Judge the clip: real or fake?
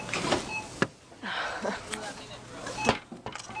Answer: real